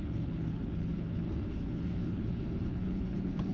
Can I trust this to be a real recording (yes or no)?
no